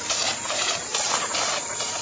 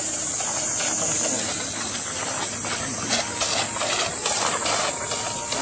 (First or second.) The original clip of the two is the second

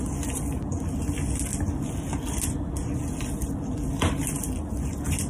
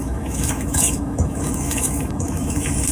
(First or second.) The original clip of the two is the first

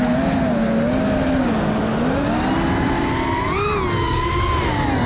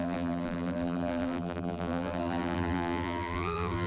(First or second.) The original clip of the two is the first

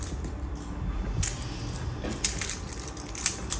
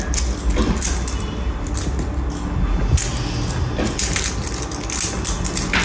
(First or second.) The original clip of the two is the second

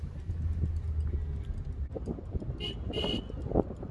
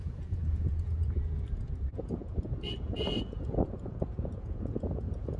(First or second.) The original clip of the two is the first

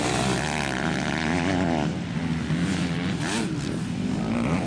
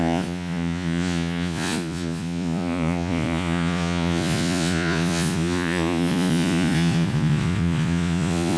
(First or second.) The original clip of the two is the first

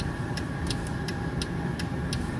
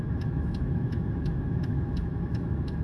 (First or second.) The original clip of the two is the first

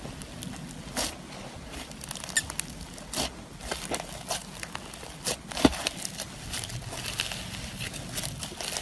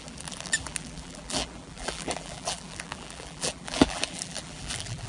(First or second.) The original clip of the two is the first